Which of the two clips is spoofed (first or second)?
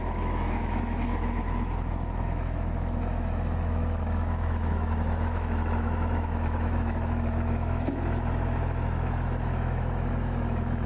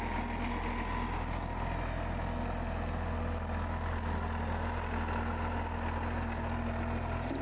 first